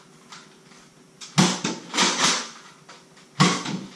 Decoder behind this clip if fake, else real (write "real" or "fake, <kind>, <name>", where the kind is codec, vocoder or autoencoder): real